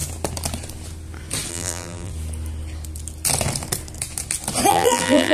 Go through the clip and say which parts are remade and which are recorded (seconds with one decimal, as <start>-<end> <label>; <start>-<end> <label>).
0.0-1.5 recorded; 1.5-2.1 remade; 2.1-4.7 recorded; 4.7-5.3 remade